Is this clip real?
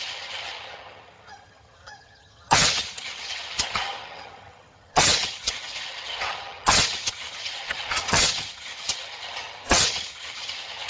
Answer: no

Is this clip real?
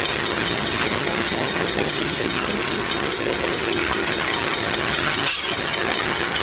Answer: no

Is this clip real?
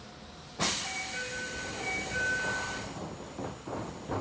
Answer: yes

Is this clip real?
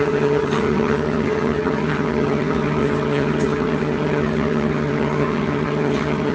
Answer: no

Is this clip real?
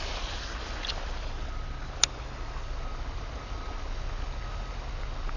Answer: yes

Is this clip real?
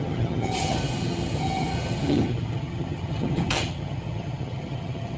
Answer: no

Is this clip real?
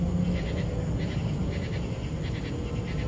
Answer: yes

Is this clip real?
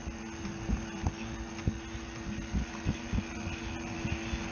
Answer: yes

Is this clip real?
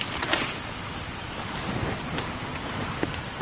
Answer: yes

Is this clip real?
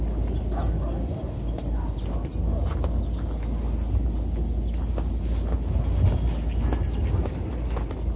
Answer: yes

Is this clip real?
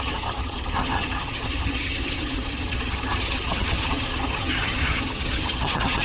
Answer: no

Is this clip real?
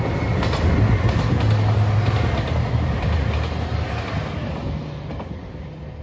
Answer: yes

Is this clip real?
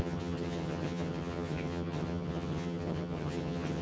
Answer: no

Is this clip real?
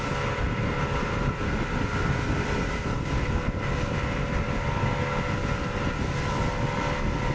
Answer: yes